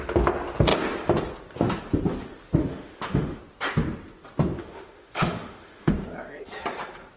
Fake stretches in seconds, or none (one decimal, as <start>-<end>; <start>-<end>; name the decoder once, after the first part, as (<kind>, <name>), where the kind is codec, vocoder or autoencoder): 2.7-3.4 (autoencoder, DAC-VAE); 4.6-5.9